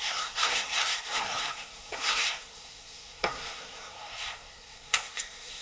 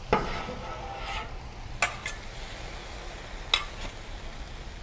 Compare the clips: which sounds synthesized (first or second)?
first